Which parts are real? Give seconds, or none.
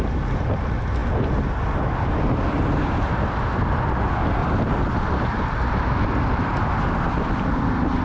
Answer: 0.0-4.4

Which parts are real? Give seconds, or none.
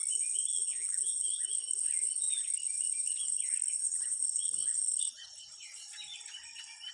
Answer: 0.0-0.5; 1.4-6.9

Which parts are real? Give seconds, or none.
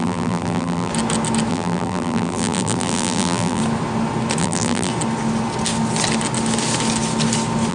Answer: 0.9-1.5; 3.6-4.4; 4.9-7.7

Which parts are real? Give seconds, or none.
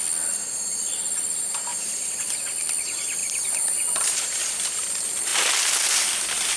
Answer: 0.0-3.2; 4.5-6.6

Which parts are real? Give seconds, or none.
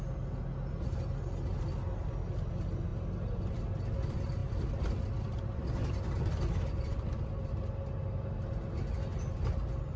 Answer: 0.0-4.4; 5.0-10.0